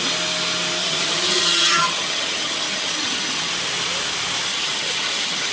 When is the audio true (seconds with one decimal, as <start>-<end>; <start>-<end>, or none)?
0.0-0.8; 3.5-4.5